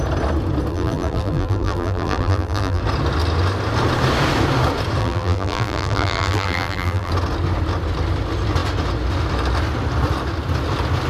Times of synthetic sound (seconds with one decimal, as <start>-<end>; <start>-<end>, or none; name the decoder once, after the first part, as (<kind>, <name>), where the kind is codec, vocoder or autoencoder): 0.7-2.8 (vocoder, BigVGAN v2); 5.0-7.1